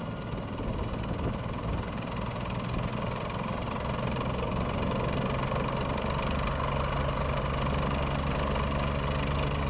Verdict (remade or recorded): recorded